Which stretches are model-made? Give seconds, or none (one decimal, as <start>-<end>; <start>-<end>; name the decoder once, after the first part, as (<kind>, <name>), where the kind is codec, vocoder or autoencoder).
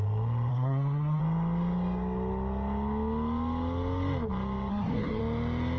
0.5-1.2 (codec, SNAC); 4.7-5.2